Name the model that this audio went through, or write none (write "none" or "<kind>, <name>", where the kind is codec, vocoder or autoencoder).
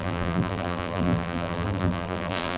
vocoder, BigVGAN v2